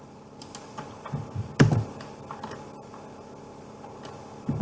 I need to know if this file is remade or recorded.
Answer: recorded